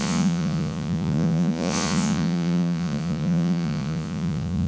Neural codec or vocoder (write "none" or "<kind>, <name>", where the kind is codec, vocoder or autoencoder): vocoder, Vocos